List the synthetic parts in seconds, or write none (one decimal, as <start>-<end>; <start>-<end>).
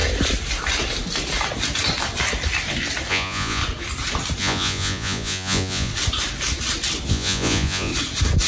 3.1-3.6; 4.4-5.9; 7.1-7.9